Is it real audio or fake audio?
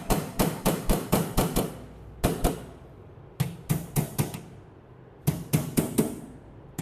real